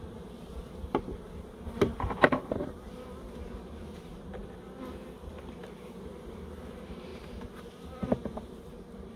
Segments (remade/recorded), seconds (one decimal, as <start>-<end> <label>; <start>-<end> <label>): 0.0-4.4 remade; 4.4-5.6 recorded; 5.6-9.2 remade